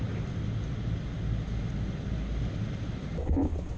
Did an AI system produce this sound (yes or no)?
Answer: no